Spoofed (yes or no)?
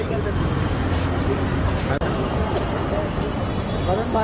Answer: no